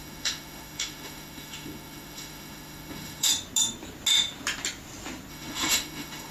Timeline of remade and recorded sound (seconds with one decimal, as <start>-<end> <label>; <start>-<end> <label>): 0.0-3.3 remade; 3.3-5.3 recorded; 5.3-6.3 remade